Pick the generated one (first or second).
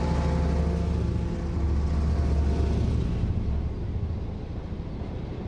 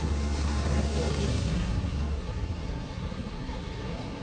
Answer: second